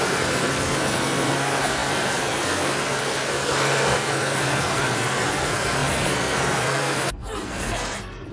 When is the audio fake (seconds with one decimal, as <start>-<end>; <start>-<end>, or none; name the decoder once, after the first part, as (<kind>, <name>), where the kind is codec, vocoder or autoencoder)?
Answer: 0.0-8.3 (codec, SNAC)